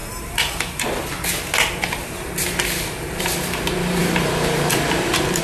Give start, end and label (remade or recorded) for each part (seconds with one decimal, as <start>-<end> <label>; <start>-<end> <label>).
0.0-3.2 recorded; 3.2-5.4 remade